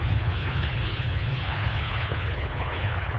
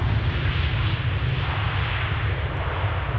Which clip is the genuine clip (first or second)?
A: second